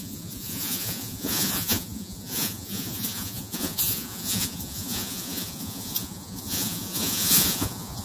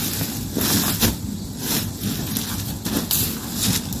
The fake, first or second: first